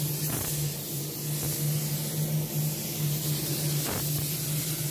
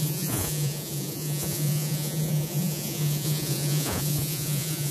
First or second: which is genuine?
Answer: first